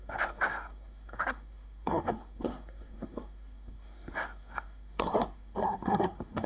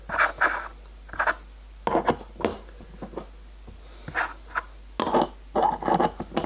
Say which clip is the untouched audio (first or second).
second